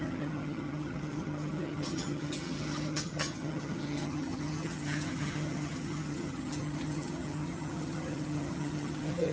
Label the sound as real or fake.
fake